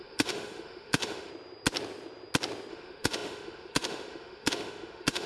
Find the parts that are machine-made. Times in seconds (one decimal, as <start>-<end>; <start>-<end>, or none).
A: 0.0-1.3; 2.7-5.3